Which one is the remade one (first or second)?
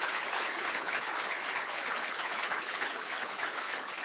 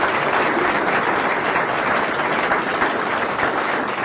first